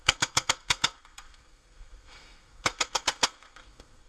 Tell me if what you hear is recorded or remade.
remade